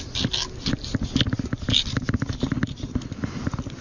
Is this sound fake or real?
real